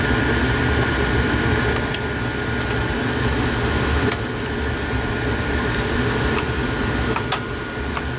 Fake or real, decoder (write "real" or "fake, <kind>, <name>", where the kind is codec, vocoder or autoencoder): real